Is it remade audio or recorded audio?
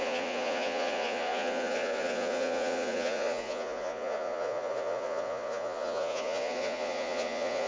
remade